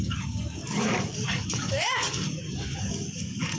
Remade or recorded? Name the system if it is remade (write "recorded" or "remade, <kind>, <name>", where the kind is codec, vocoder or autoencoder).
remade, codec, DAC